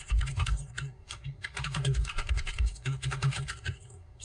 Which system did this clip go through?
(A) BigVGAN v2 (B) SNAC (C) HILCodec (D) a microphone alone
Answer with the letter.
B